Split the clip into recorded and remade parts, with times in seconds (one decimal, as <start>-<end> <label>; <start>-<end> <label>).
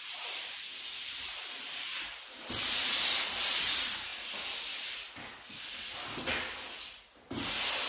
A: 0.0-4.1 remade; 4.1-7.3 recorded; 7.3-7.9 remade